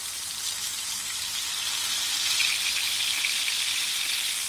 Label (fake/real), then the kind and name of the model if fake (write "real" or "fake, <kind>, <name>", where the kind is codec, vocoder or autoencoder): real